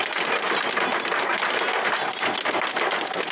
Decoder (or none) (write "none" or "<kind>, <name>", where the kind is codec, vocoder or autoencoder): none